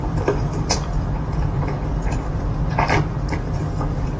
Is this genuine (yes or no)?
no